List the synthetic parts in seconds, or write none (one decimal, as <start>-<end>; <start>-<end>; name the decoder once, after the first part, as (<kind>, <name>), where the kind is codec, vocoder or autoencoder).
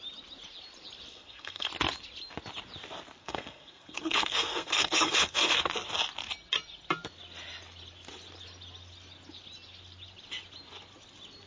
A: 1.1-1.7 (codec, SNAC); 3.2-5.6